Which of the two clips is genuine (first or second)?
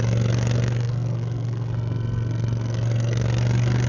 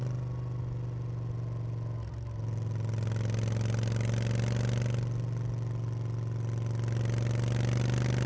second